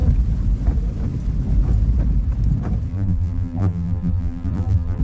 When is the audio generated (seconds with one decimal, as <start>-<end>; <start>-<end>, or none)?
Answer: 2.9-5.0